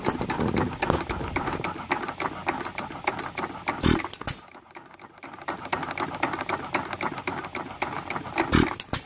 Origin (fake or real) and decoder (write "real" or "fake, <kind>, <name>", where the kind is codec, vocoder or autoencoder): real